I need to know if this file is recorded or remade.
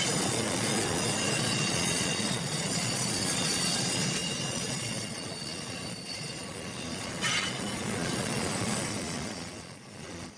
remade